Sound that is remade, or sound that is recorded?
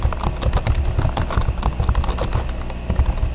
recorded